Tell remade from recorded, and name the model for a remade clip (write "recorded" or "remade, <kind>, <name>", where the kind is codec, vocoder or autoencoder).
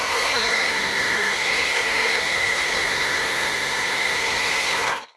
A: remade, codec, SNAC